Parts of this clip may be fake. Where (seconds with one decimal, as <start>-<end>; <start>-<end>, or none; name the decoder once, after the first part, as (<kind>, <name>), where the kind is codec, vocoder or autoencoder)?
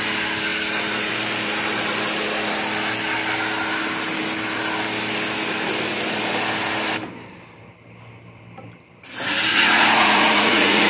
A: 9.5-10.9 (vocoder, Vocos)